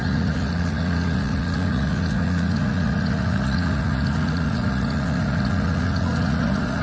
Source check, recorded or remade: remade